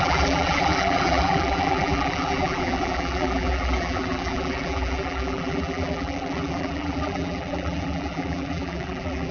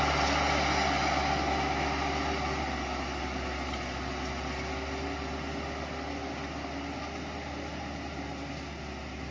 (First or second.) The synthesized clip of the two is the first